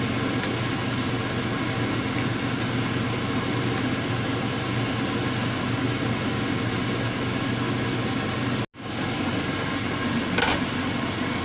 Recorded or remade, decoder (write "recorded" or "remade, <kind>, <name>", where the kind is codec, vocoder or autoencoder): recorded